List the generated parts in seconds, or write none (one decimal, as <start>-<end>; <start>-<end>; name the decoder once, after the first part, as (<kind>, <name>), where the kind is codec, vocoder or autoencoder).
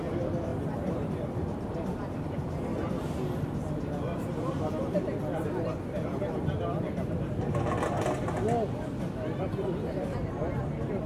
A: 0.5-1.1 (vocoder, BigVGAN v2)